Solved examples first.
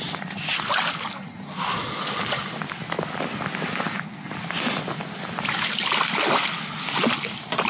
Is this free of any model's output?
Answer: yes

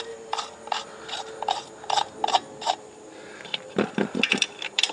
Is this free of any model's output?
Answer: no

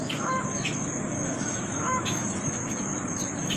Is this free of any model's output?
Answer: no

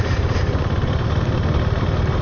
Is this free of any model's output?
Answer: yes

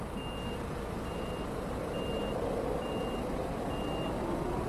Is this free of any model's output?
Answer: yes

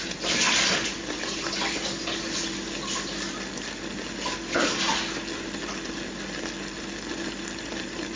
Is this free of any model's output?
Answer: yes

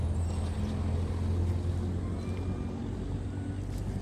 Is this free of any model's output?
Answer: yes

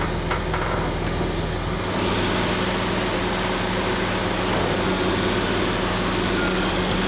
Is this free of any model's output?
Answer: yes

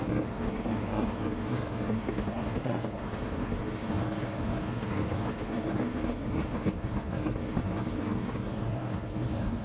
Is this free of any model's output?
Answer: no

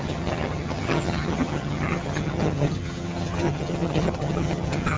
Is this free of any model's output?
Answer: no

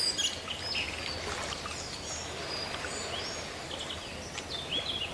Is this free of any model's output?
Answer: yes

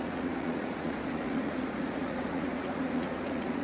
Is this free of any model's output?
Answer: no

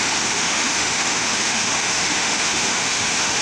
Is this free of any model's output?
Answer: no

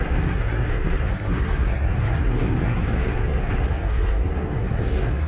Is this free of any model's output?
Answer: no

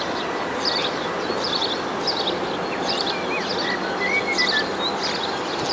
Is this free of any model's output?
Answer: yes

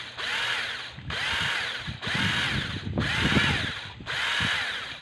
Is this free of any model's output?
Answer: yes